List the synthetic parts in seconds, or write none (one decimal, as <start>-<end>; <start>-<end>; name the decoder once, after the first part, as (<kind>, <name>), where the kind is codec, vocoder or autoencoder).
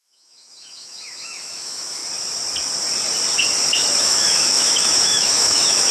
0.0-2.0 (autoencoder, DAC-VAE); 4.0-5.9